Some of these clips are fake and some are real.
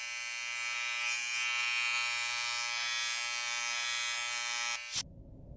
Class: real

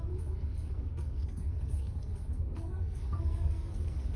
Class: fake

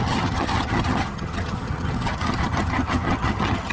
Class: fake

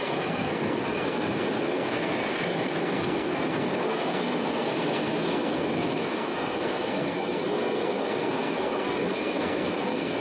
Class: fake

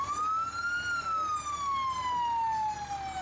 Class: real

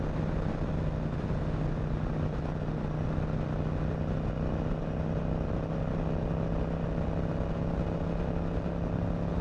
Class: real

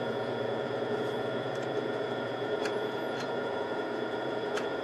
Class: fake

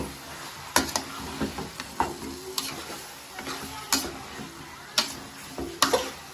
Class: real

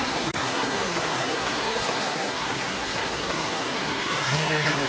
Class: fake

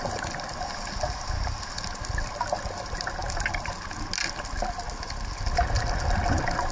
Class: real